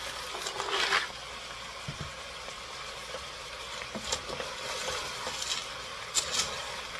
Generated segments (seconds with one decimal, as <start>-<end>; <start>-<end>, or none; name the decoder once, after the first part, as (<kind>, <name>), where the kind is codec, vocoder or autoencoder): none

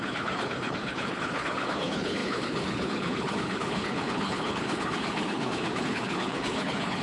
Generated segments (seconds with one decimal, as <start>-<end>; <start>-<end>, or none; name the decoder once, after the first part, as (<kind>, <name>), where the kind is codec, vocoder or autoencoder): 0.0-7.0 (codec, HILCodec)

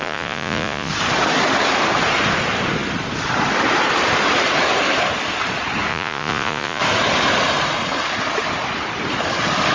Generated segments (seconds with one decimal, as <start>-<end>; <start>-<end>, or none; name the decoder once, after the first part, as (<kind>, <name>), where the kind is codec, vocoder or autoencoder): 0.0-0.9 (vocoder, Vocos); 5.9-6.8

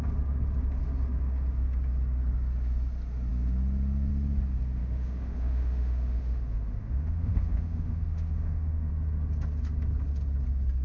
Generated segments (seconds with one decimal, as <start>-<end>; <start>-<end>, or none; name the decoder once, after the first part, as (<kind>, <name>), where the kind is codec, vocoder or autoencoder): 4.8-8.9 (autoencoder, DAC-VAE)

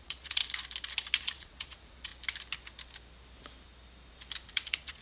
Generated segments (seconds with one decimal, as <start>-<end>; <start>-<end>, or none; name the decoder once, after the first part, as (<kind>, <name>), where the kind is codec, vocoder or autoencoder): 0.0-0.4 (vocoder, Vocos); 1.2-2.1; 4.5-5.0

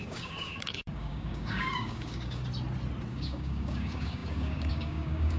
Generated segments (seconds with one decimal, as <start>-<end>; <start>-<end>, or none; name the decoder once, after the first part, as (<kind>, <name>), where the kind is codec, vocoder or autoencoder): 0.0-2.4 (codec, DAC); 3.1-5.4

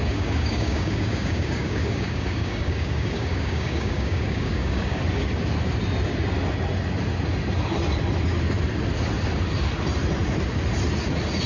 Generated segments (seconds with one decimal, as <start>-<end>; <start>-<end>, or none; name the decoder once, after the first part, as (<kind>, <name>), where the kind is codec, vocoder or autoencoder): 0.0-5.0 (codec, DAC)